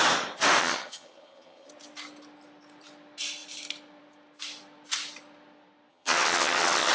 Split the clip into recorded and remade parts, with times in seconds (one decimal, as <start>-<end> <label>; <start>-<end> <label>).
0.0-0.6 recorded; 0.6-1.7 remade; 1.7-5.9 recorded; 5.9-6.9 remade